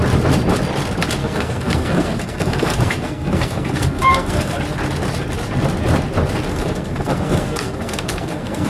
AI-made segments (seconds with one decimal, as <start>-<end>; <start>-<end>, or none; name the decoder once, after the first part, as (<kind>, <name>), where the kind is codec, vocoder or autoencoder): 1.2-4.6 (codec, SNAC); 6.5-8.7